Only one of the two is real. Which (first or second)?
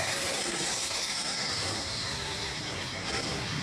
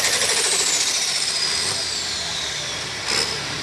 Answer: second